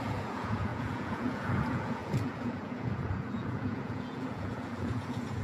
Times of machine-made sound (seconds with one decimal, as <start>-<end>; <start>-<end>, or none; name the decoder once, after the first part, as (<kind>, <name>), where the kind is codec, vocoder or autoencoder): 0.0-5.4 (vocoder, Vocos)